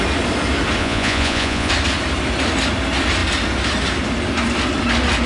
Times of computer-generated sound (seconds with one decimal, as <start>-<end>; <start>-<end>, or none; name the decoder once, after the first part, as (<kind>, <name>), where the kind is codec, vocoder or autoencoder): 0.8-1.7 (vocoder, Vocos)